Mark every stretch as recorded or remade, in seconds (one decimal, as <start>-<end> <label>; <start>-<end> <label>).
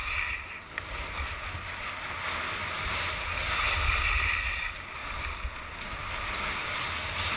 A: 0.0-7.4 recorded